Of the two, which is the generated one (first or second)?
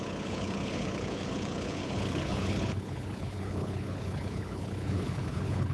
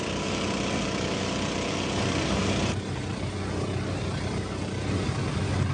first